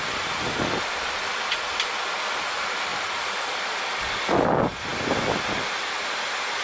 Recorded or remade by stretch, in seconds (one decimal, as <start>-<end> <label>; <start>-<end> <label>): 0.0-2.9 recorded; 2.9-4.2 remade; 4.2-6.6 recorded